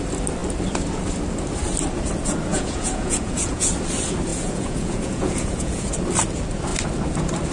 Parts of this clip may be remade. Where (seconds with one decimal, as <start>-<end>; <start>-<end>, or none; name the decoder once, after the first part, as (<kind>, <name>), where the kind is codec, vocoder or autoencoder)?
2.5-3.7 (vocoder, Vocos); 4.3-5.9